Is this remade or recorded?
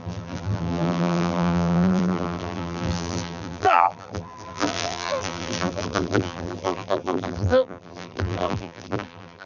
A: remade